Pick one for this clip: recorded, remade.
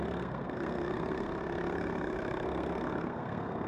remade